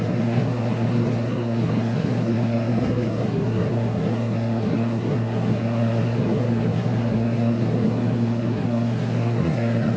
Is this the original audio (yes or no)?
no